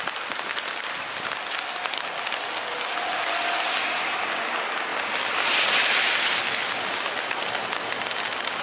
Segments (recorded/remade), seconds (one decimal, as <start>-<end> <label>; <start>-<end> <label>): 0.0-4.9 recorded; 4.9-5.7 remade; 5.7-8.6 recorded